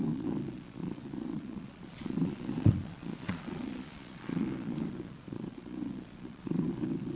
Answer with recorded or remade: remade